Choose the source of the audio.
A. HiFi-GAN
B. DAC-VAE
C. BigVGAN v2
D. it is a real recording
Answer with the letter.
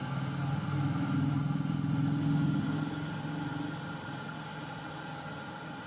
D